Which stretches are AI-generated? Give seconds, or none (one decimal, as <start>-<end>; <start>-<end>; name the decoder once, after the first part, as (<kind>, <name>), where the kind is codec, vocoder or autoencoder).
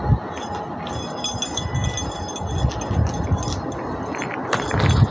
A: none